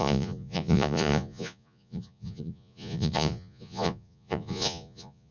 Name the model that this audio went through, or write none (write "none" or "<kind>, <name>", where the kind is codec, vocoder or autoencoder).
vocoder, Vocos